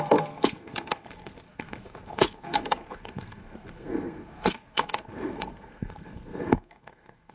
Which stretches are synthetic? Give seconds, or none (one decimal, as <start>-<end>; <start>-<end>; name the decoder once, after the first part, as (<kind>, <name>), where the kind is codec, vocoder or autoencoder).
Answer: 0.0-7.3 (codec, SNAC)